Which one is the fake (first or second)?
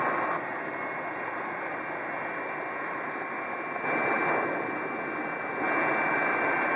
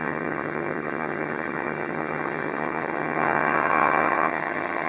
second